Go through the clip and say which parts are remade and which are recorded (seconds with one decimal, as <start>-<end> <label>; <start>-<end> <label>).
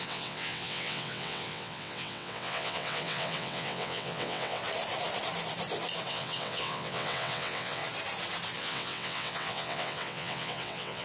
0.0-4.6 remade; 4.6-6.1 recorded; 6.1-7.8 remade; 7.8-8.6 recorded; 8.6-11.0 remade